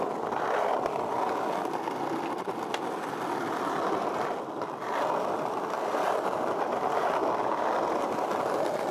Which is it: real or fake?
real